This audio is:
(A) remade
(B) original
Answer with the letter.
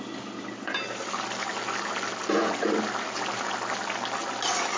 B